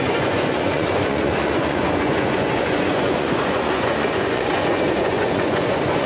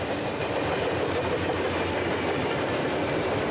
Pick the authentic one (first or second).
second